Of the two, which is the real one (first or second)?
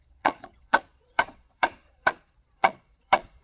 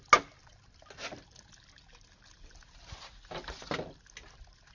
second